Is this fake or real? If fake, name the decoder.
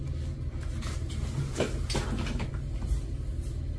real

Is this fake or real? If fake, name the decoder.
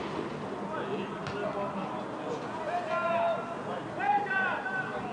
real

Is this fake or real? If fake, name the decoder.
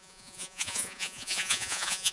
fake, vocoder, Vocos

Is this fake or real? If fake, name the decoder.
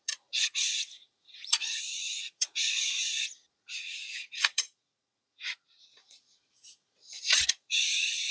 fake, vocoder, Vocos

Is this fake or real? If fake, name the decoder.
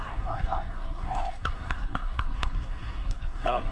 fake, codec, SNAC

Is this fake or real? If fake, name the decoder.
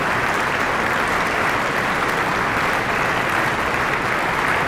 real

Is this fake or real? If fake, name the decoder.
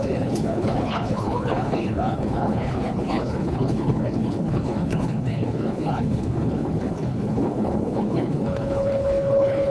fake, codec, HILCodec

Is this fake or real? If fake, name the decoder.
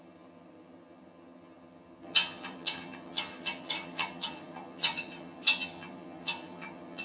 fake, vocoder, HiFi-GAN